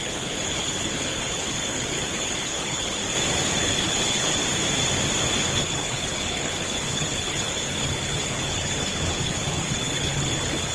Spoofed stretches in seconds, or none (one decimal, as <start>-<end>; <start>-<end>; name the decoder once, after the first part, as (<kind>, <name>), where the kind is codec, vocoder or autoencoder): 0.0-3.0 (codec, HILCodec); 3.6-4.4; 5.4-10.7

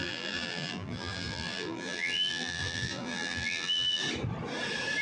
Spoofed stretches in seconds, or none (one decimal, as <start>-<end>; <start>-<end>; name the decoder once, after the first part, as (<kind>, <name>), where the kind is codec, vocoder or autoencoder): 0.0-4.0 (vocoder, BigVGAN v2)

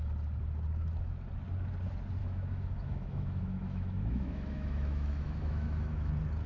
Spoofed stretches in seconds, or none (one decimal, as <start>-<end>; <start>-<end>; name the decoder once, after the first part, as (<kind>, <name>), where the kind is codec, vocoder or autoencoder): 2.2-6.1 (autoencoder, DAC-VAE)

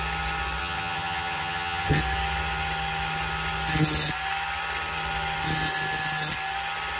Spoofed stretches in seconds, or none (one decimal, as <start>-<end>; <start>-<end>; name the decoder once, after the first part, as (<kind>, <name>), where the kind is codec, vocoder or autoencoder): 0.6-2.0 (vocoder, HiFi-GAN)

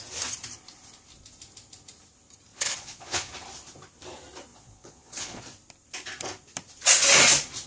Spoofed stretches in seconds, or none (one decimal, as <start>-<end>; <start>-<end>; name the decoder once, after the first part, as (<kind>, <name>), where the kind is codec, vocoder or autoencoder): 2.5-3.3 (vocoder, Vocos); 4.5-5.4

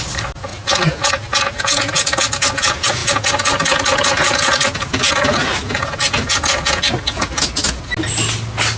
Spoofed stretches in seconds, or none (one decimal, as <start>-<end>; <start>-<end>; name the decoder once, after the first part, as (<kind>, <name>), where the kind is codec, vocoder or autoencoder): none

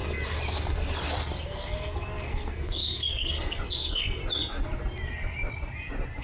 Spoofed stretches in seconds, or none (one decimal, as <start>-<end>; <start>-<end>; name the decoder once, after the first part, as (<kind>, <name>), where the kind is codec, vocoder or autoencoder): 1.4-4.2 (codec, SNAC)

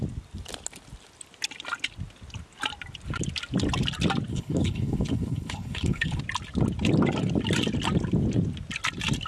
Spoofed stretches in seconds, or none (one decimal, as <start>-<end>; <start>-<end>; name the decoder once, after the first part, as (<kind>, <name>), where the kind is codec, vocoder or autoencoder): 4.3-6.2 (codec, HILCodec)